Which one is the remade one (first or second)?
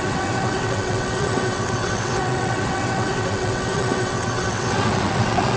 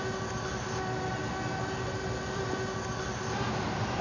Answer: first